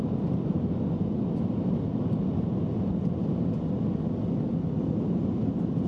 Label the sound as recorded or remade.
recorded